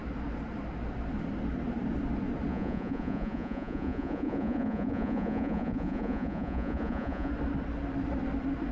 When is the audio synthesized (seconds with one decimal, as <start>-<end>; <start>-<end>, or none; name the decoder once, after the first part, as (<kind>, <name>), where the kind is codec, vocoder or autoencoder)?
2.5-7.3 (vocoder, Vocos)